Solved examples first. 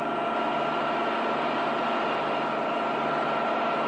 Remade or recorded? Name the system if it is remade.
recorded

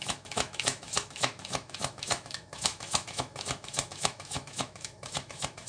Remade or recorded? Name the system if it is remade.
remade, autoencoder, DAC-VAE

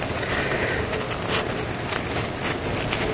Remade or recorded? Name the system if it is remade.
recorded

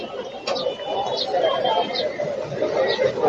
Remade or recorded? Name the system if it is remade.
recorded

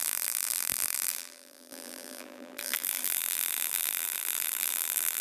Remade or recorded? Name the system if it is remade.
remade, vocoder, BigVGAN v2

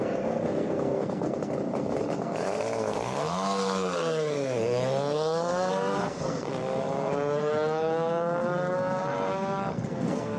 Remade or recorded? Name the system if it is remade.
remade, codec, SNAC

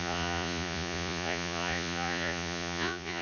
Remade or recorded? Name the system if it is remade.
remade, vocoder, Vocos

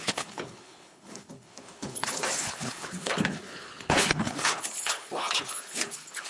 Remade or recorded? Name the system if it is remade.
remade, codec, HILCodec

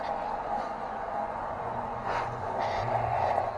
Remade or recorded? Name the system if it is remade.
remade, vocoder, Vocos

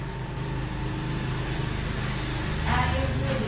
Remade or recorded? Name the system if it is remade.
recorded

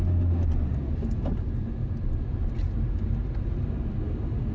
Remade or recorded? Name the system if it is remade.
recorded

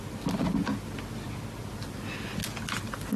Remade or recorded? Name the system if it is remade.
recorded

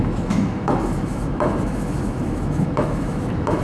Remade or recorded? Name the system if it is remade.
remade, autoencoder, DAC-VAE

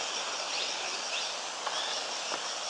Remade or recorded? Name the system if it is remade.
recorded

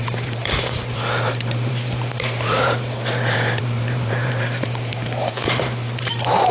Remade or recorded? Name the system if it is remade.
remade, vocoder, BigVGAN v2